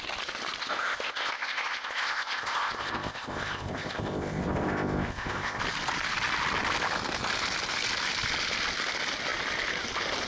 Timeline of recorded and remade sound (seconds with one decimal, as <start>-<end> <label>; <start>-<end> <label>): 0.0-0.6 recorded; 0.6-5.6 remade; 5.6-10.3 recorded